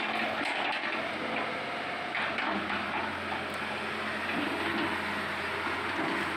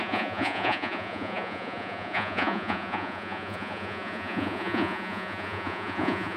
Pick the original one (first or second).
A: first